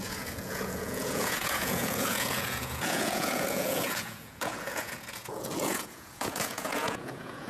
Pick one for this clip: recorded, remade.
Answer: remade